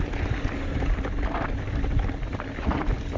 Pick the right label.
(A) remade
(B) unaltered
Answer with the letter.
B